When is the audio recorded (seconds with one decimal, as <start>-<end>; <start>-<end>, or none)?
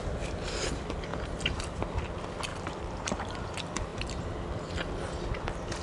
0.0-1.1; 1.6-2.5; 3.5-5.8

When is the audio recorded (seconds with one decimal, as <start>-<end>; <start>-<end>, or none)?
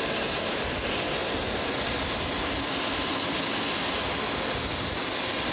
0.0-5.5